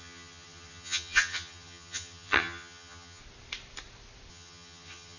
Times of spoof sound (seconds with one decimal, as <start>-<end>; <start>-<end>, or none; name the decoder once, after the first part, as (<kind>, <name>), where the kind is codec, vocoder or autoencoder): 0.0-3.2 (vocoder, HiFi-GAN); 4.3-5.2